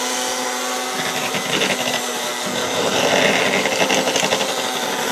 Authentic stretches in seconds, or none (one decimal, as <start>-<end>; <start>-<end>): 0.0-1.2; 2.3-5.1